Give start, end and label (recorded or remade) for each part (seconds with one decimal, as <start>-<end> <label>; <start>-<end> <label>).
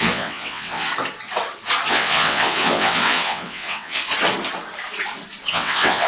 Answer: 0.0-0.9 remade; 0.9-1.9 recorded; 1.9-4.0 remade; 4.0-5.5 recorded; 5.5-6.1 remade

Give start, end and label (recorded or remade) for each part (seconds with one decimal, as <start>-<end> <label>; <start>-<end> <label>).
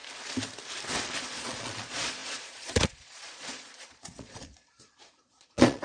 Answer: 0.0-1.2 recorded; 1.2-5.8 remade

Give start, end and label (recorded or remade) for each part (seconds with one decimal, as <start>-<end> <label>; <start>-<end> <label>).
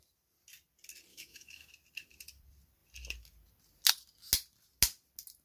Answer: 0.0-1.1 recorded; 1.1-1.7 remade; 1.7-5.4 recorded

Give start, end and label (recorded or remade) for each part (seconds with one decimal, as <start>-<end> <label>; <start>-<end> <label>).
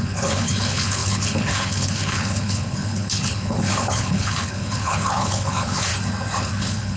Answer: 0.0-5.9 remade; 5.9-6.5 recorded; 6.5-7.0 remade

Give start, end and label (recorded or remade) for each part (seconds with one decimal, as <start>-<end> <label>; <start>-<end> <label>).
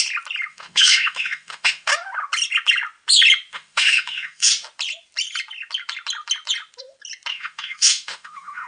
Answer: 0.0-0.5 recorded; 0.5-1.9 remade; 1.9-3.5 recorded; 3.5-4.5 remade; 4.5-7.3 recorded; 7.3-8.7 remade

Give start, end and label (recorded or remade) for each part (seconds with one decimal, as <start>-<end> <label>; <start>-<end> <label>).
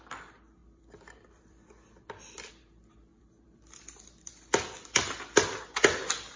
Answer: 0.0-0.6 recorded; 0.6-2.5 remade; 2.5-3.1 recorded; 3.1-5.6 remade; 5.6-6.4 recorded